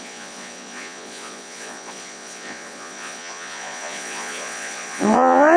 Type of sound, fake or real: fake